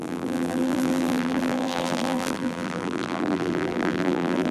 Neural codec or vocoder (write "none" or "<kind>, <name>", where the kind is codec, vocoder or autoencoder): vocoder, BigVGAN v2